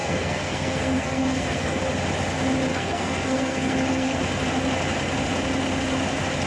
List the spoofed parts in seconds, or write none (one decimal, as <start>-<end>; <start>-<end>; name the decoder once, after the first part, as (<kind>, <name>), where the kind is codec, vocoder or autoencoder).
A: 0.0-1.8 (codec, SNAC); 2.7-4.2

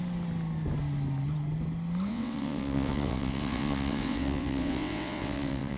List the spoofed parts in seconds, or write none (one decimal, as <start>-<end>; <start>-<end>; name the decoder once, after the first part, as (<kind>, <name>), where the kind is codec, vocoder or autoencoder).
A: 2.1-5.8 (vocoder, WaveNeXt)

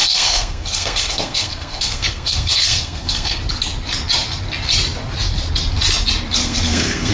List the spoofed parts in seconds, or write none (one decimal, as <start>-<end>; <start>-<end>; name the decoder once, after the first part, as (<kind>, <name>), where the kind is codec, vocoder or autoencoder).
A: 0.0-3.4 (codec, SNAC); 6.4-7.1

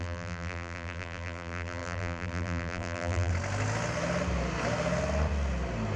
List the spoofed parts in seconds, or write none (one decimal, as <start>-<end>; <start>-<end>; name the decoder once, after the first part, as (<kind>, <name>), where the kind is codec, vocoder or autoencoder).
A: 0.0-3.3 (vocoder, BigVGAN v2)

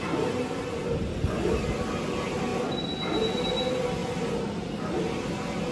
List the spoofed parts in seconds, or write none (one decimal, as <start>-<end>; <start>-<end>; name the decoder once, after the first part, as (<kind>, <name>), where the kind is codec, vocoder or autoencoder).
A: none